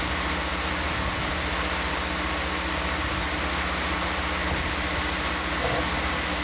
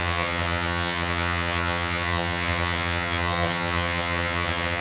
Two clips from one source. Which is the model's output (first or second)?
second